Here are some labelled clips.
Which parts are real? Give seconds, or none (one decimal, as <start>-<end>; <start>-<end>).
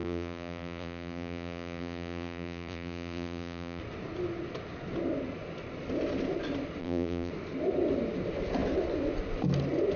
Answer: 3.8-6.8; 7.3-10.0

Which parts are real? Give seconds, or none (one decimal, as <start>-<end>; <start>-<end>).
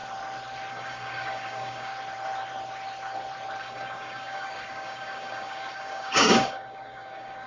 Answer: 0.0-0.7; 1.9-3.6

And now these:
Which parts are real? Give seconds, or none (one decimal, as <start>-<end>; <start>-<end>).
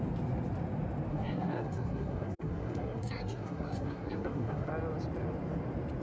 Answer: 0.0-1.1; 4.7-6.0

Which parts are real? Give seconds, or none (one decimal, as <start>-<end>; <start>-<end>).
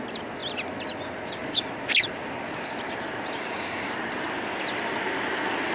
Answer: 0.0-3.4; 3.9-5.7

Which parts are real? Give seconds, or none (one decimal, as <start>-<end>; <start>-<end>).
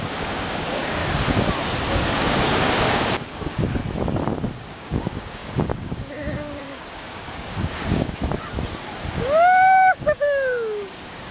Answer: 1.0-1.9; 3.8-4.7; 8.2-9.1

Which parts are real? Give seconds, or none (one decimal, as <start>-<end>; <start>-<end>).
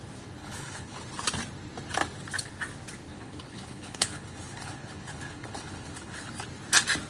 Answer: 0.0-0.4; 1.0-3.1; 6.3-7.1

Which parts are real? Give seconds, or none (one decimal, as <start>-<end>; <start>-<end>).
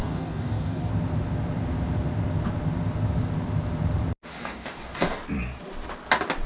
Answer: 0.9-4.3; 5.2-6.5